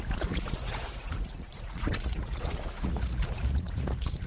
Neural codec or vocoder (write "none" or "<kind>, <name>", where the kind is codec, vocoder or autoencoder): vocoder, Vocos